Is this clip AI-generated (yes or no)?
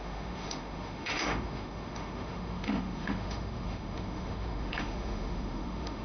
yes